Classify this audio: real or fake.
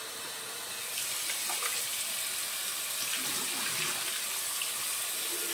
real